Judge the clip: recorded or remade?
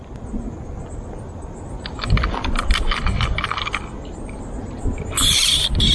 recorded